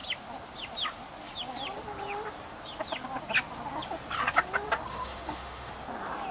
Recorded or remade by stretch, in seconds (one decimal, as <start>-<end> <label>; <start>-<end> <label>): 0.0-4.9 recorded; 4.9-5.7 remade; 5.7-6.3 recorded